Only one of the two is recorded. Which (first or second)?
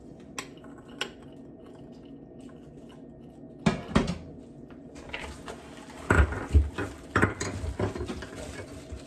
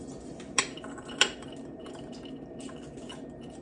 first